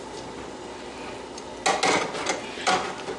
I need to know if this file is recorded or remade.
recorded